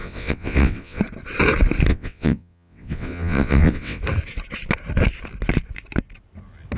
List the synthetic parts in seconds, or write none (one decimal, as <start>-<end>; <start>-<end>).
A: 0.0-1.0; 1.9-4.0